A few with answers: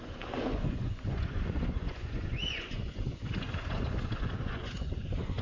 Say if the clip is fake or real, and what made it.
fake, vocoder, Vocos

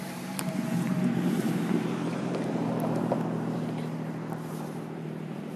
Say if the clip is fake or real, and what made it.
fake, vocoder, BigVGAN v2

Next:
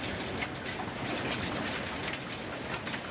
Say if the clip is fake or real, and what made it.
real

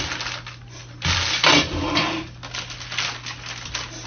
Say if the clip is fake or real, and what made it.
real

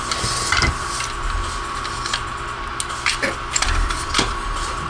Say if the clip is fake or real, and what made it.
real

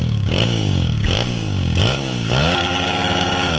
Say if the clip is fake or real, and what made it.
fake, codec, DAC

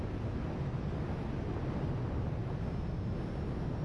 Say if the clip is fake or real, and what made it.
real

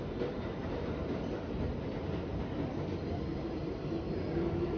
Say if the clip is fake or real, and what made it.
real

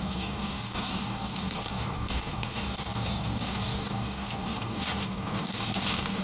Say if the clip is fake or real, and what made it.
fake, codec, DAC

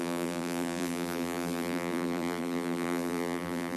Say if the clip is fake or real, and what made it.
fake, vocoder, BigVGAN v2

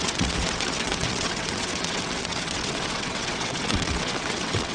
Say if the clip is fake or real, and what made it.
fake, vocoder, WaveNeXt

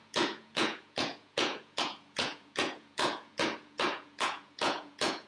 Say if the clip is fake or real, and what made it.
fake, vocoder, Vocos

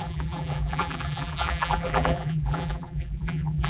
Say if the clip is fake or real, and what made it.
fake, vocoder, BigVGAN v2